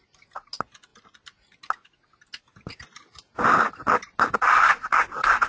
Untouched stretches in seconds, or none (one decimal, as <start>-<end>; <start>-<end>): 0.0-5.5